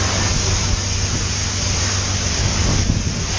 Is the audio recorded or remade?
recorded